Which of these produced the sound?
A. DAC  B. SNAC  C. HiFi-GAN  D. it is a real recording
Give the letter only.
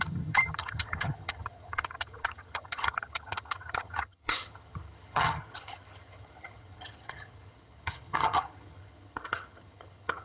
C